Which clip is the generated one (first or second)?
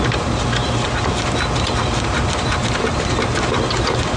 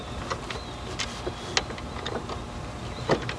first